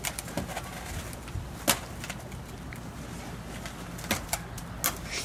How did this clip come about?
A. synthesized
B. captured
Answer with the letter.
B